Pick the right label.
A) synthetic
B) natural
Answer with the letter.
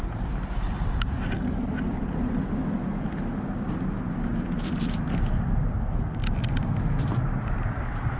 A